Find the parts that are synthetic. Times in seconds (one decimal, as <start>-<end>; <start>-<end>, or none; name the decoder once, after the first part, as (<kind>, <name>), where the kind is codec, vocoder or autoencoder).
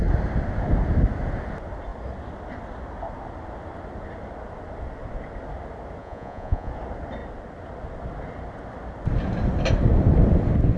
6.0-6.7 (vocoder, Vocos)